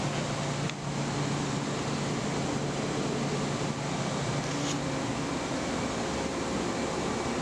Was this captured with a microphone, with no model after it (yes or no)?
yes